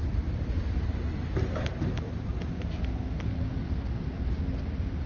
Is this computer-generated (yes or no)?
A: no